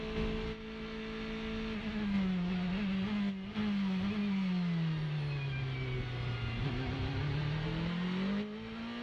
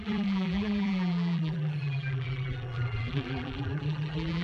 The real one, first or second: first